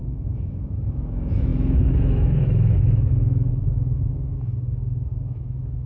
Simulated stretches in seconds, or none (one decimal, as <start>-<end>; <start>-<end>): 0.0-5.9